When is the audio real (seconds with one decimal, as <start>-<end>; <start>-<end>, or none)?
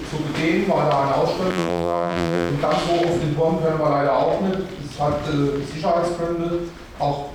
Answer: 0.0-1.5; 2.5-7.3